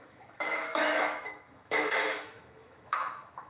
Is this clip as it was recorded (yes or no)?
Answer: no